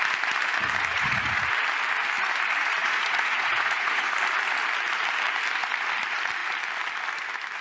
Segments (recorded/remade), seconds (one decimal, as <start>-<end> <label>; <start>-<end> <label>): 0.0-0.9 recorded; 0.9-1.4 remade; 1.4-2.8 recorded; 2.8-4.1 remade; 4.1-7.6 recorded